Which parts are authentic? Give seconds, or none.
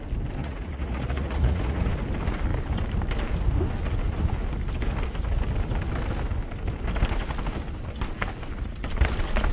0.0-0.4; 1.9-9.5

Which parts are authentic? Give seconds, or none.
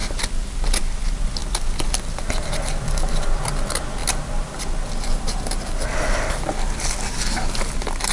0.0-1.4; 2.0-4.0; 4.6-8.1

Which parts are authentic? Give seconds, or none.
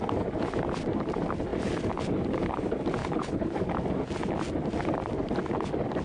0.0-3.0; 3.6-6.0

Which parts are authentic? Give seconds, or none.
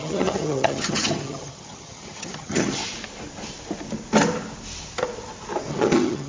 2.8-5.7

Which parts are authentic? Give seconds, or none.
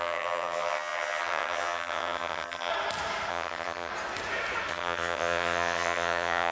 2.7-3.3; 3.9-4.7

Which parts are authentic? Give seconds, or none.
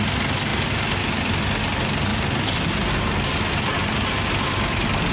0.0-2.1; 2.9-3.8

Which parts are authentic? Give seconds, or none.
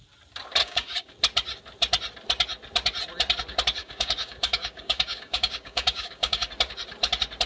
0.0-0.6; 1.1-3.8; 6.5-7.5